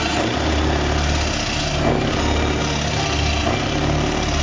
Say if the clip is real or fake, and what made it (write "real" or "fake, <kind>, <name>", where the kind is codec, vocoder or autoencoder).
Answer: real